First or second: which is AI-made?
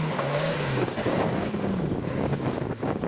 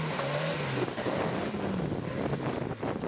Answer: first